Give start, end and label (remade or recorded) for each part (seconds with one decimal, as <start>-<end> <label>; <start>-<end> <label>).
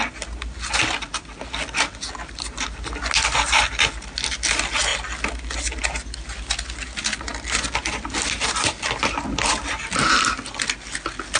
0.0-11.4 recorded